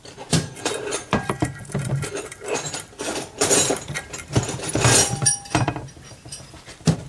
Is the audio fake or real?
fake